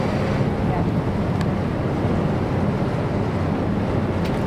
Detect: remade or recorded recorded